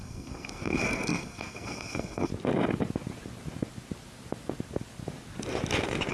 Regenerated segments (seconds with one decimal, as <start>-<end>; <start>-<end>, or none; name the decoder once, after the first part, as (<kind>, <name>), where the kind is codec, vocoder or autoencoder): 0.0-2.3 (codec, SNAC)